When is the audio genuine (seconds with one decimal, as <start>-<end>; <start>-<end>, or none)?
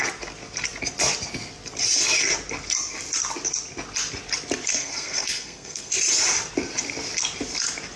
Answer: 0.0-4.7; 5.9-8.0